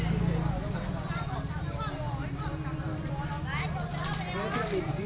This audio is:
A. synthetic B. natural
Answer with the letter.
B